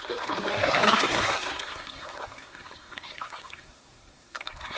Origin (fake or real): fake